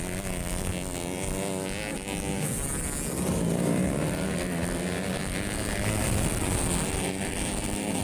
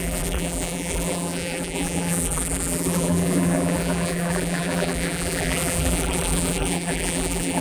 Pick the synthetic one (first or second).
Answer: second